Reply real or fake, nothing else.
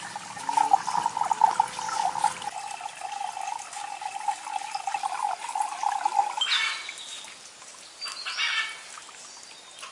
real